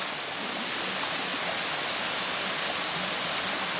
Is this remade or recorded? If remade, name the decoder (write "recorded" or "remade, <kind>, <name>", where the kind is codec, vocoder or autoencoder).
recorded